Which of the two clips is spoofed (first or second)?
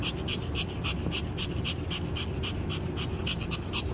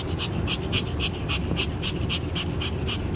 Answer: second